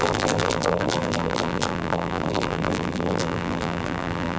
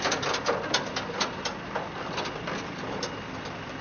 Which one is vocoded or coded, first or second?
first